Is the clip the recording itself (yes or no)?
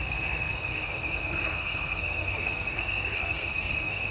no